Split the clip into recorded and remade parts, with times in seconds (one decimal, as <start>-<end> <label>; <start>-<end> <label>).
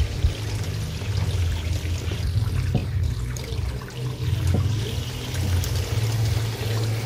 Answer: 0.0-2.8 recorded; 2.8-3.7 remade; 3.7-7.1 recorded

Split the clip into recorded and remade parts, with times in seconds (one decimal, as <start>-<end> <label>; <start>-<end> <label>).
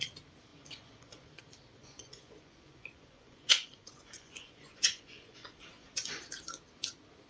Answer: 0.0-0.5 recorded; 0.5-1.4 remade; 1.4-1.8 recorded; 1.8-6.2 remade; 6.2-7.3 recorded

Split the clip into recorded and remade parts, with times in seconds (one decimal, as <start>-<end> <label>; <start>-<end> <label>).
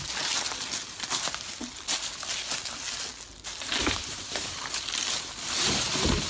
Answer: 0.0-4.0 recorded; 4.0-4.6 remade; 4.6-6.3 recorded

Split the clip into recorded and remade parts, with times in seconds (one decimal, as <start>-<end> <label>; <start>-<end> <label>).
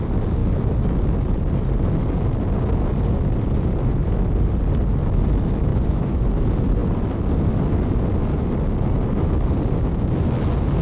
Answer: 0.0-5.7 recorded; 5.7-6.3 remade; 6.3-10.8 recorded